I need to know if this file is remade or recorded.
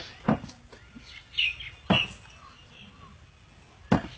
recorded